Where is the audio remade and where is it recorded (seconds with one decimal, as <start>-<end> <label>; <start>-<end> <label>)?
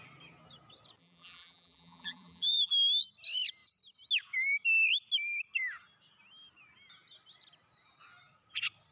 0.0-1.0 recorded; 1.0-2.7 remade; 2.7-8.9 recorded